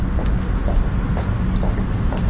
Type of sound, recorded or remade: recorded